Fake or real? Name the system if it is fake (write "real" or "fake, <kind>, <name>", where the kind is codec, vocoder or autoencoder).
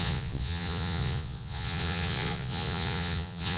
fake, vocoder, Vocos